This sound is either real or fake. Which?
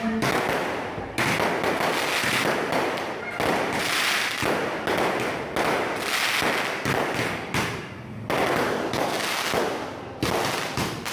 real